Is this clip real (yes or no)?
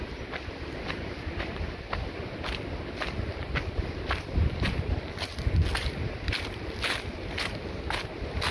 yes